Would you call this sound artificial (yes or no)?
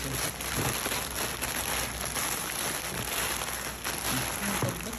no